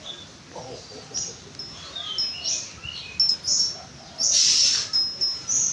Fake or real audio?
real